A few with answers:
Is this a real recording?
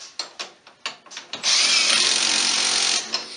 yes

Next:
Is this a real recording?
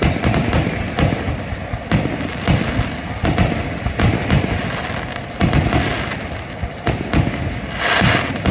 yes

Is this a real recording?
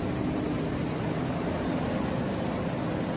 yes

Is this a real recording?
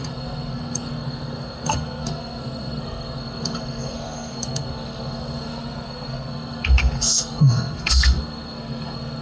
no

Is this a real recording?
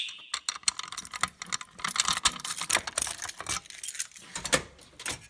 yes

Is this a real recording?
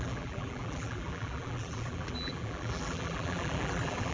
no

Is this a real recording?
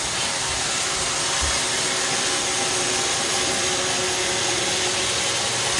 yes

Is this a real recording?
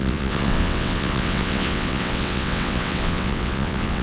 no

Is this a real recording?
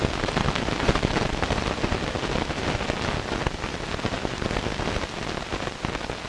yes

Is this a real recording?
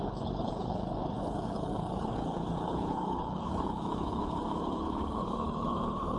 no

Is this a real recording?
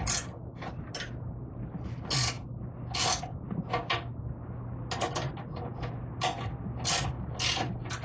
yes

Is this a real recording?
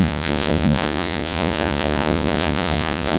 no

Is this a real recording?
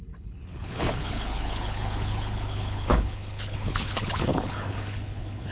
no